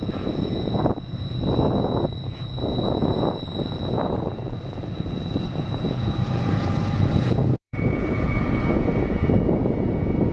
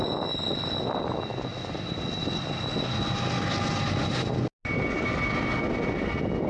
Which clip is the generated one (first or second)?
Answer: first